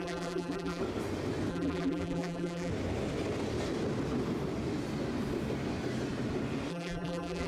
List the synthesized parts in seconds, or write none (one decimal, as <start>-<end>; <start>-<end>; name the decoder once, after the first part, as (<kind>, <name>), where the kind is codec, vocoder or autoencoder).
0.0-0.8 (vocoder, BigVGAN v2); 1.5-2.7; 6.7-7.5